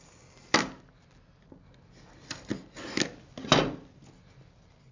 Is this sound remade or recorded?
recorded